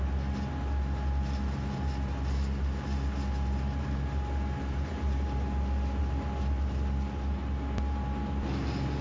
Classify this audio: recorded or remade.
recorded